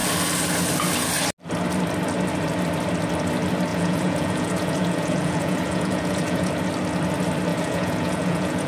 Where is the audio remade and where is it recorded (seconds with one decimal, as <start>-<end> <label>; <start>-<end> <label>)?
0.0-3.7 recorded; 3.7-6.5 remade; 6.5-7.5 recorded; 7.5-8.7 remade